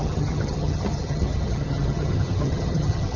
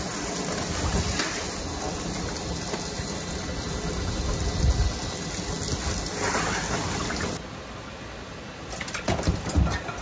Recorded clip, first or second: second